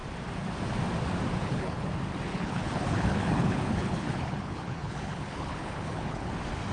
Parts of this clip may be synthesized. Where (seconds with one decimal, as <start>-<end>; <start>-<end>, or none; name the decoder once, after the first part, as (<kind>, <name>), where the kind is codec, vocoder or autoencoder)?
1.4-1.9 (codec, HILCodec); 2.3-6.3